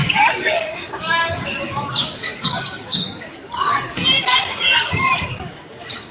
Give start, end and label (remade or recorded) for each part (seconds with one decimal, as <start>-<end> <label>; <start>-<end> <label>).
0.0-6.1 remade